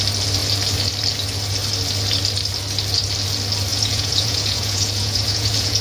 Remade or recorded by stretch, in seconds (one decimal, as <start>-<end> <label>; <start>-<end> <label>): 0.0-3.7 recorded; 3.7-5.8 remade